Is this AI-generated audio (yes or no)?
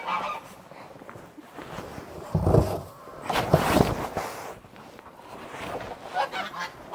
no